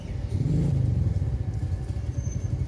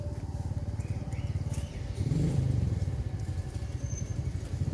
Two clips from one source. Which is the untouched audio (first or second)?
first